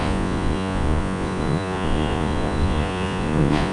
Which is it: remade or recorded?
remade